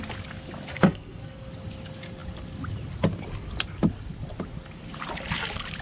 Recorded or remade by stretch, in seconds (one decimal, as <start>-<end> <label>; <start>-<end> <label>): 0.0-0.7 recorded; 0.7-1.5 remade; 1.5-5.8 recorded